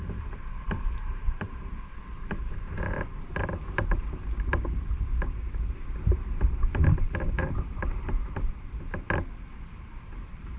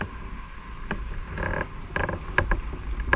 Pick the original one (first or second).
second